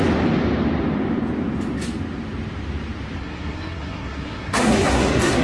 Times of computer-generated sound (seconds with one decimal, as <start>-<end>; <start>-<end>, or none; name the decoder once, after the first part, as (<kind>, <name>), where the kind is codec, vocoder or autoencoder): 3.2-5.4 (codec, SNAC)